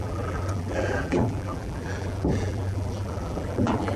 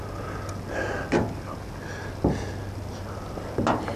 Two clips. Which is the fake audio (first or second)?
first